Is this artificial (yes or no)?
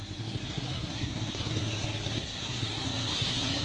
yes